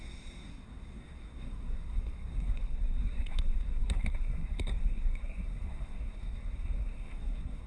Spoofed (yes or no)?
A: yes